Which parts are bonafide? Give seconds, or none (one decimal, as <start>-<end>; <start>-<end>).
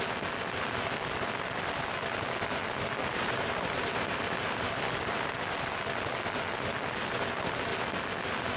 0.0-3.0; 5.3-8.6